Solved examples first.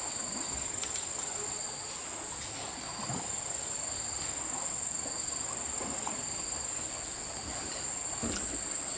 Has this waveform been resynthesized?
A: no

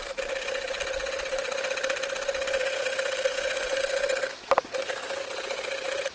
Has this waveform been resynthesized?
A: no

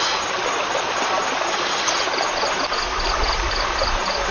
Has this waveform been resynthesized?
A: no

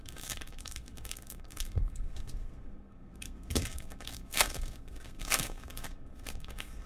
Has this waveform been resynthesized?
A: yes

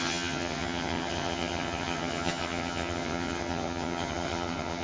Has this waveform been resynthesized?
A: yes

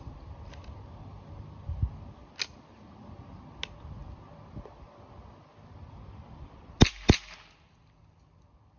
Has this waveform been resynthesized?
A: no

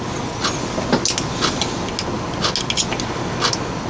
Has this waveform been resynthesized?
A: no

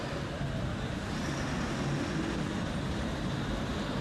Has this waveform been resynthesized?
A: no